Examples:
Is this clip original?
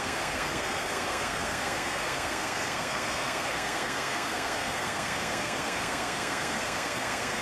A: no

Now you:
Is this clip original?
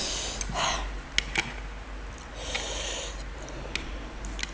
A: yes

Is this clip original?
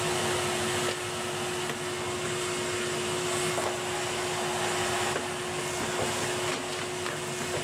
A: yes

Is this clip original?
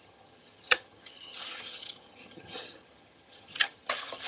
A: no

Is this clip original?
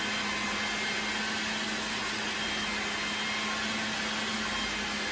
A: yes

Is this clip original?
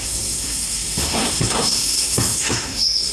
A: no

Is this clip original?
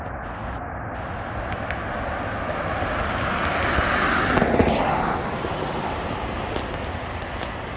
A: yes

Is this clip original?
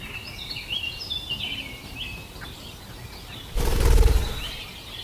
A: yes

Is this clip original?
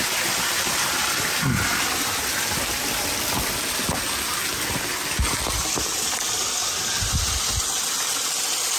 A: yes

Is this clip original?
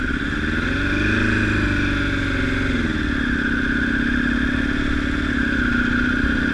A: yes